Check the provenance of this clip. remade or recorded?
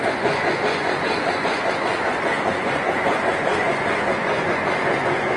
remade